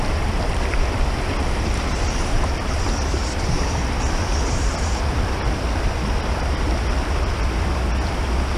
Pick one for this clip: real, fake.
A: fake